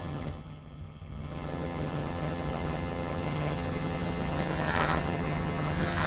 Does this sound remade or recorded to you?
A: remade